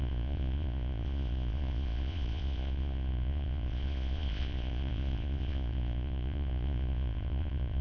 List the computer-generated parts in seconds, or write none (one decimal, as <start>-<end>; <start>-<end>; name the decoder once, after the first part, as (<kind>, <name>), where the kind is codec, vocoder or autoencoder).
0.0-7.8 (vocoder, Vocos)